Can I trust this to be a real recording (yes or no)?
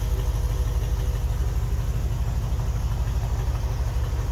yes